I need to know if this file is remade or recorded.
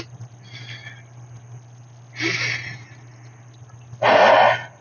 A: recorded